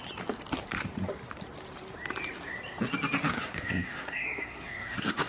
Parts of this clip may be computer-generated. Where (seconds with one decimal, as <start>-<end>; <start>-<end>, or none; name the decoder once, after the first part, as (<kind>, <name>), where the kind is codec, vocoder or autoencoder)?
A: 3.3-5.3 (codec, SNAC)